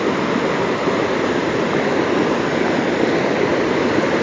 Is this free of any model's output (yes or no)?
yes